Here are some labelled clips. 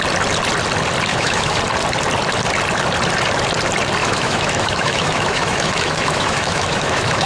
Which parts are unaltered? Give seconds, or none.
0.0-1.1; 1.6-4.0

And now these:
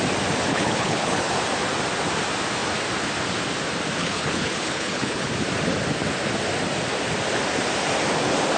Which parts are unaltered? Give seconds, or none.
0.0-0.5; 1.3-4.0; 5.3-8.6